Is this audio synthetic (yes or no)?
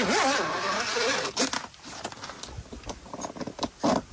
no